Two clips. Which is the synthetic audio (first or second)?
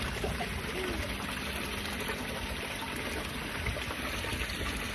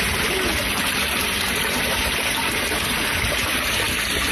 second